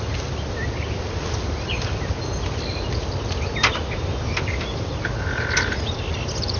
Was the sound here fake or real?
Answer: real